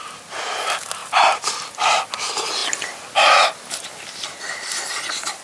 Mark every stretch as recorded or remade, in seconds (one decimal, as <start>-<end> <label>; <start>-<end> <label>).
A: 0.0-5.4 recorded